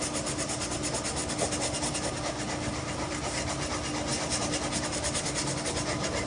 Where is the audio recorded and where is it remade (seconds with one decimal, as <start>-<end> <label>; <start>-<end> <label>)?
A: 0.0-6.3 recorded